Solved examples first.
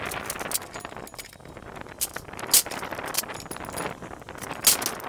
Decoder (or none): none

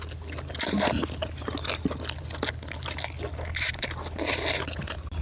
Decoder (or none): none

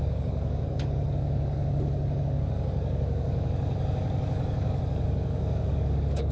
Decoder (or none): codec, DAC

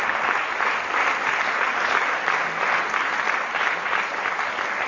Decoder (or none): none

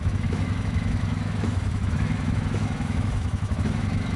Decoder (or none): autoencoder, DAC-VAE